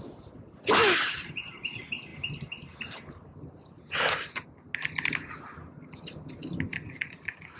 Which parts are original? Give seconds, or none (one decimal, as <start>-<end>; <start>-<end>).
2.1-5.8